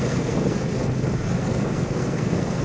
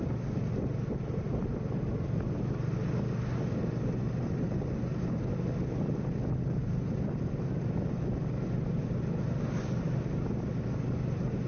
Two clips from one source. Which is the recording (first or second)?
second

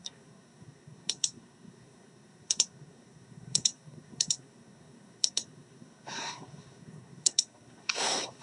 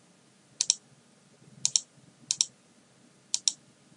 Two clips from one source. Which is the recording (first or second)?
second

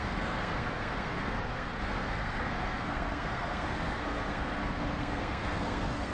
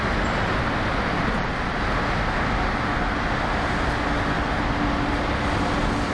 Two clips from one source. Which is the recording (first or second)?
second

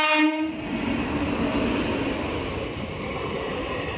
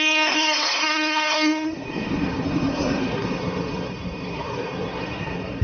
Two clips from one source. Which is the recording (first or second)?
first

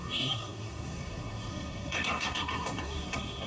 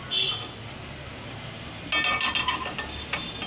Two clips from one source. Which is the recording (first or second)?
second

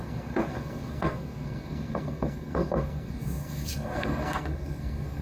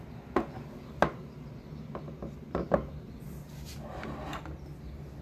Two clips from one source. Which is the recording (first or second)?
second